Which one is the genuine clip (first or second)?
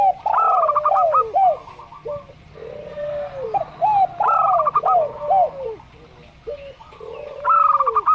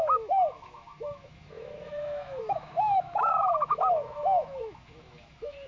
first